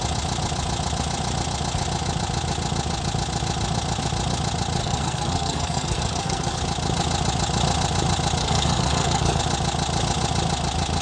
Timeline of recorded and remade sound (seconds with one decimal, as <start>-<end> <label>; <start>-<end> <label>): 0.0-4.8 recorded; 4.8-6.6 remade; 6.6-8.4 recorded; 8.4-9.4 remade; 9.4-11.0 recorded